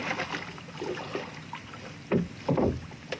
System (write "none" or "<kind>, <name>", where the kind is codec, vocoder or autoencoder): none